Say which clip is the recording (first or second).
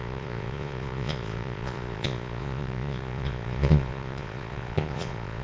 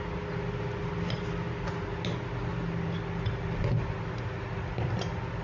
second